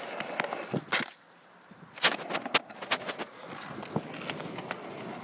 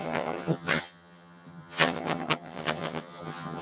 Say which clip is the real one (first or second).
first